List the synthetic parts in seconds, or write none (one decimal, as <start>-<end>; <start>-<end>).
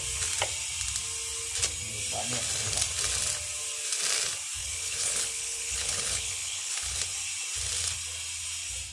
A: 4.6-7.0